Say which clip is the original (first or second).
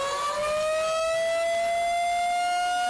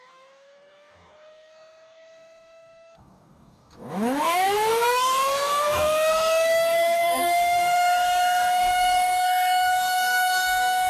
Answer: first